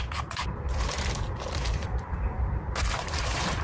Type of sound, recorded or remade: remade